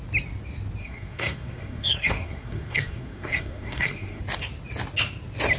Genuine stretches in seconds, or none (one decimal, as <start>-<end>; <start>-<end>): 0.0-0.8; 4.2-5.6

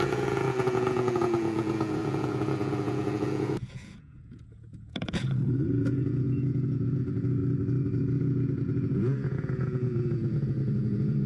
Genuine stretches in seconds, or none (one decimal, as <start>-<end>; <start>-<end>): 7.4-8.0